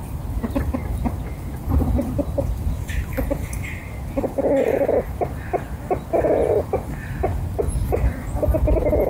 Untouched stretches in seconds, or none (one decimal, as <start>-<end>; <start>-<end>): 3.8-9.1